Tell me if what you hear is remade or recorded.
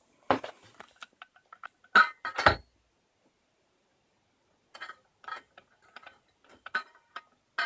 recorded